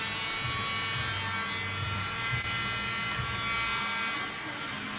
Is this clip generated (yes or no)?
no